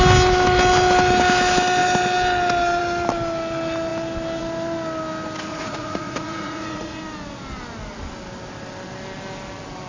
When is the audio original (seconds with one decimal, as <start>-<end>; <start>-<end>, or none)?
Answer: 0.0-5.5; 7.0-9.9

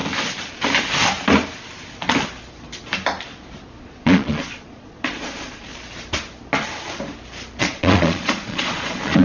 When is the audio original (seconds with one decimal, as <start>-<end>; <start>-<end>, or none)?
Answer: 0.0-3.8; 5.7-7.6

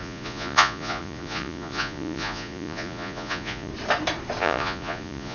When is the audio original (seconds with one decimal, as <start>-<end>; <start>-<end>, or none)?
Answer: 3.7-4.4

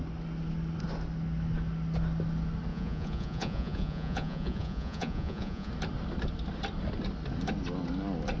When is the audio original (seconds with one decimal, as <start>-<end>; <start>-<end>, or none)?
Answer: 0.0-2.7; 5.7-8.4